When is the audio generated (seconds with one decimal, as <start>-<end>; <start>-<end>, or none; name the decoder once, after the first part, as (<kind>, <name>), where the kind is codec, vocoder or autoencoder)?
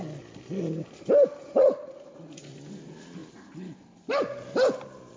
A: 1.4-2.5 (vocoder, Vocos)